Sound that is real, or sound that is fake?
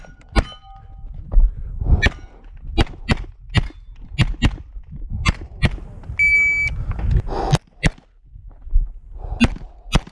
real